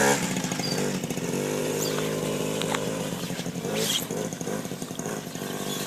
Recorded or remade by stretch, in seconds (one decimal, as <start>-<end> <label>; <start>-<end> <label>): 0.0-1.6 recorded; 1.6-5.1 remade; 5.1-5.9 recorded